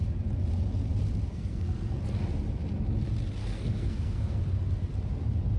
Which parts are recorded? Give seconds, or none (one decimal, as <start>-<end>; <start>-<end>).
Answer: 0.0-1.3; 2.0-3.4; 4.4-5.6